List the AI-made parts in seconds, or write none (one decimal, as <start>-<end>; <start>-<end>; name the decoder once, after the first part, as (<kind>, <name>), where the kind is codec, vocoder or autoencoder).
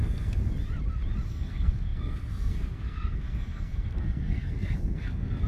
0.0-0.4 (codec, SNAC); 1.3-5.5